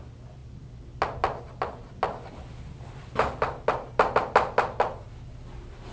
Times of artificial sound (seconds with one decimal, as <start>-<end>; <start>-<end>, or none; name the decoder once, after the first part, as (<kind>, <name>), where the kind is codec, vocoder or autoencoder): none